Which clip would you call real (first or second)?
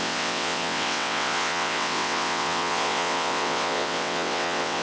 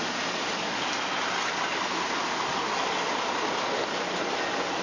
second